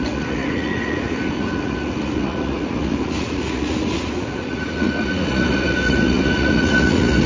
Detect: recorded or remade remade